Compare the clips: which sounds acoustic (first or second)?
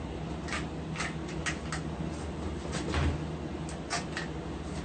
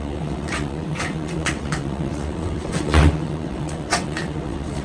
first